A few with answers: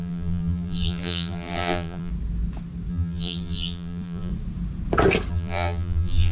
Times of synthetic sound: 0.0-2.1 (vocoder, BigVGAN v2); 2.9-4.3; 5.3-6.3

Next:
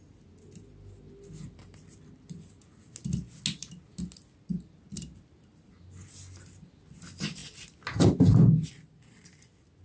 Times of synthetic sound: none

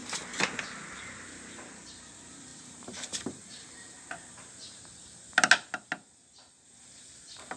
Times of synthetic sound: 2.5-4.3 (vocoder, BigVGAN v2)

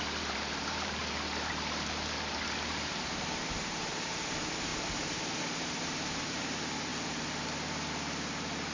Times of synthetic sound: 0.0-1.0 (vocoder, BigVGAN v2); 2.7-6.9; 7.9-8.7